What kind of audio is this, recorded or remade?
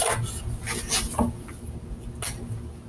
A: recorded